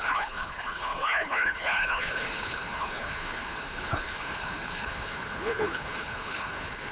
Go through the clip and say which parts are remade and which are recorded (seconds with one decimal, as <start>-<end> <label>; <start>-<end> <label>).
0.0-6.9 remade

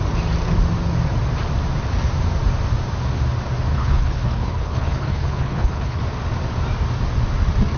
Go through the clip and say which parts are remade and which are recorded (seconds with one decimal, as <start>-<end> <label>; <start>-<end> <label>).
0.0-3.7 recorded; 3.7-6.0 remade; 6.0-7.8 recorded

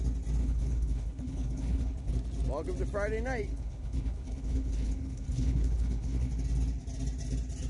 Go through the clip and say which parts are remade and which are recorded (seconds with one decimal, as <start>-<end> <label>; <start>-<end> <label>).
0.0-0.4 recorded; 0.4-2.1 remade; 2.1-3.5 recorded; 3.5-6.3 remade; 6.3-7.7 recorded

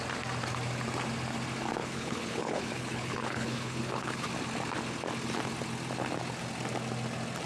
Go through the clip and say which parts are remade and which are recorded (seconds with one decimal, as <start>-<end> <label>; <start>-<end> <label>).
0.0-1.8 recorded; 1.8-4.3 remade; 4.3-7.5 recorded

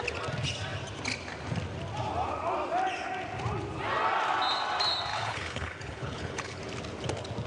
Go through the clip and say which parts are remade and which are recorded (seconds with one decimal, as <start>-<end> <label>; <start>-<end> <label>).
0.0-5.1 recorded; 5.1-6.6 remade; 6.6-7.5 recorded

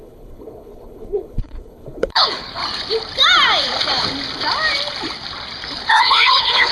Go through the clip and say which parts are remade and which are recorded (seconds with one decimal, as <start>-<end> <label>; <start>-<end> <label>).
0.0-2.6 remade; 2.6-5.9 recorded; 5.9-6.7 remade

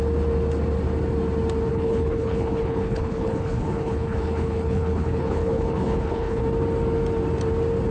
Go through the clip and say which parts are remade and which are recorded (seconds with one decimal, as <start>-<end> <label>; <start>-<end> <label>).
0.0-1.7 recorded; 1.7-6.4 remade; 6.4-7.9 recorded